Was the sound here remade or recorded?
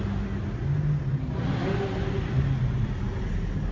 recorded